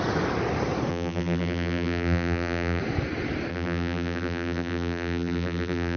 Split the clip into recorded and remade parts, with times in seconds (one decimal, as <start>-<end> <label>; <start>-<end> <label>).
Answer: 0.0-0.9 recorded; 0.9-2.8 remade; 2.8-3.5 recorded; 3.5-6.0 remade